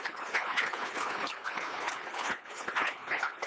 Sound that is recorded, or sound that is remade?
remade